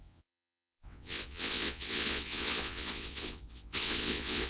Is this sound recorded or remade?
remade